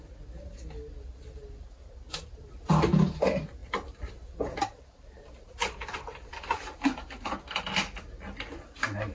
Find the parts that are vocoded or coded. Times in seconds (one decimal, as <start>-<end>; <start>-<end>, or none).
none